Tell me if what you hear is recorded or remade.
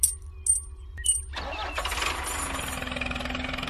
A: recorded